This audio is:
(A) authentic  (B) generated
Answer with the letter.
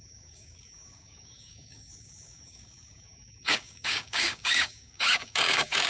B